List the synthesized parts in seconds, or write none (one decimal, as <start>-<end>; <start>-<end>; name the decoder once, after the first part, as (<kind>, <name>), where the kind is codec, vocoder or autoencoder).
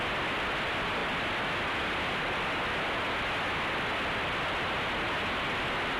none